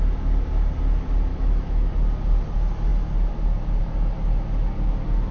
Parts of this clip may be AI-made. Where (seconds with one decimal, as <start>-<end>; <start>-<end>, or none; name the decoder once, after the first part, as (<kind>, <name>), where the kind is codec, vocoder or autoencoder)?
1.3-1.9 (autoencoder, DAC-VAE)